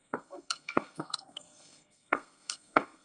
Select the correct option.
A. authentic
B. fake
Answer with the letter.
B